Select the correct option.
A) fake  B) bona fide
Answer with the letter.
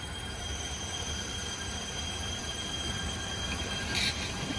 A